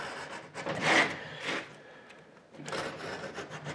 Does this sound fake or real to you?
real